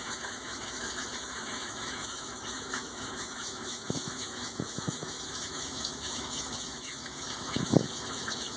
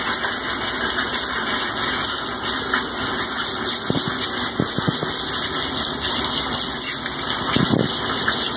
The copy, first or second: first